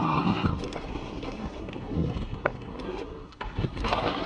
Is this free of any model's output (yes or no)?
no